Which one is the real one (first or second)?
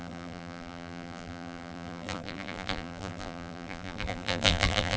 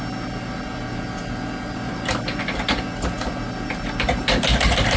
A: second